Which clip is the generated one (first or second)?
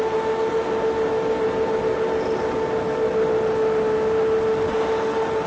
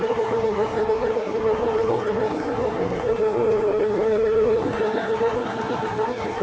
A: second